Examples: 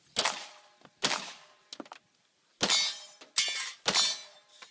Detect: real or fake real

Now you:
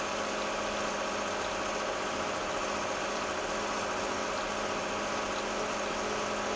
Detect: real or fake real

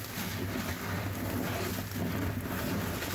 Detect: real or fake real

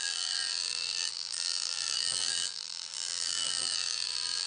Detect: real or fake fake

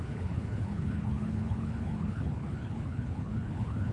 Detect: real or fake fake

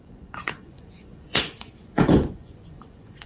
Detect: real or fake fake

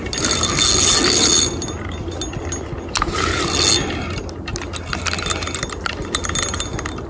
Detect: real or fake real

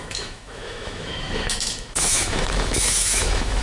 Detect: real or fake fake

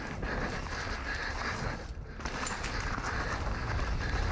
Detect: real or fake real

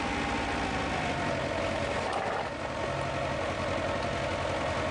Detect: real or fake real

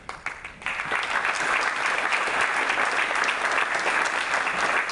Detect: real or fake real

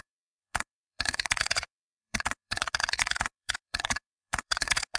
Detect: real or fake fake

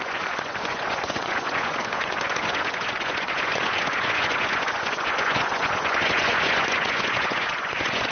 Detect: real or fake fake